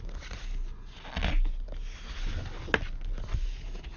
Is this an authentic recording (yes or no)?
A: yes